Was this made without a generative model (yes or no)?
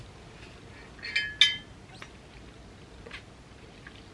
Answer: yes